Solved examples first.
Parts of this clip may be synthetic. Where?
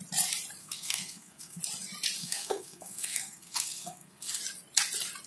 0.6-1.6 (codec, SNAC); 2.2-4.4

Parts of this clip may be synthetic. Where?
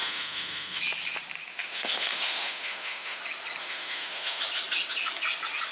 0.0-0.8 (autoencoder, DAC-VAE); 1.5-3.2; 3.6-4.4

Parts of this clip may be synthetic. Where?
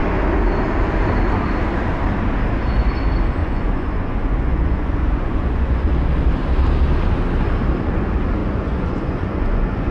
3.4-5.9 (vocoder, Vocos); 8.4-9.9